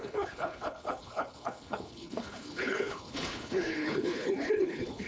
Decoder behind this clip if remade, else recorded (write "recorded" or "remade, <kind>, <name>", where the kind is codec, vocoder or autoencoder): remade, codec, HILCodec